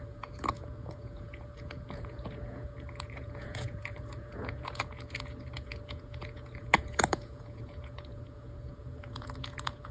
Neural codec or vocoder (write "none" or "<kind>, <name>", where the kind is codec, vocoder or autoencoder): vocoder, Vocos